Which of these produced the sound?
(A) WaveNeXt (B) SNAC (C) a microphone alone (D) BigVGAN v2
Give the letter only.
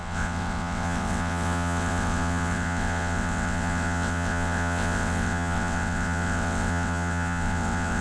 A